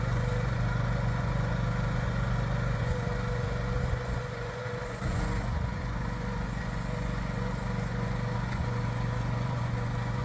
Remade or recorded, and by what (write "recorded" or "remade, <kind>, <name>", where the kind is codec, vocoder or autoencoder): remade, vocoder, Vocos